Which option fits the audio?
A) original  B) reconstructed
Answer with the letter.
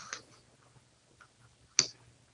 A